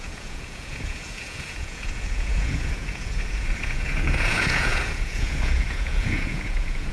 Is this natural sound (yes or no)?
no